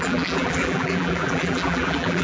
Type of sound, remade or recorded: remade